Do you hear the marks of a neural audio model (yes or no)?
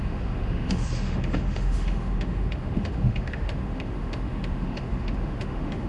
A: yes